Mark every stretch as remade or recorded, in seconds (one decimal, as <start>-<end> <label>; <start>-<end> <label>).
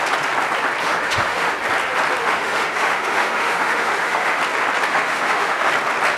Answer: 0.0-0.8 recorded; 0.8-1.5 remade; 1.5-2.2 recorded; 2.2-4.4 remade; 4.4-4.9 recorded; 4.9-5.7 remade; 5.7-6.2 recorded